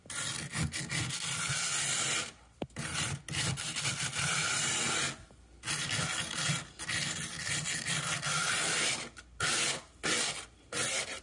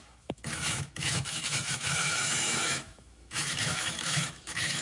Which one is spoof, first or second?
second